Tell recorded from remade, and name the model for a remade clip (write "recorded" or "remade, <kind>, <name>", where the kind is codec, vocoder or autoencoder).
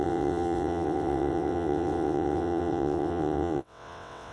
remade, vocoder, WaveNeXt